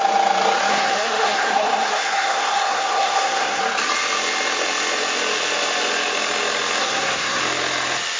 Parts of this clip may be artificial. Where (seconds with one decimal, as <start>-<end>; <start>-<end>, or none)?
0.7-3.6; 6.8-7.4